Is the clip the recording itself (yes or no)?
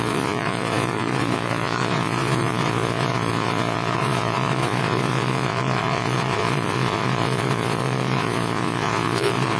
no